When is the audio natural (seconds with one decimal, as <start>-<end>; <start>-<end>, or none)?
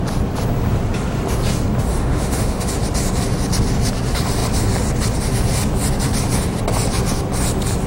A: 0.0-1.9; 2.7-7.9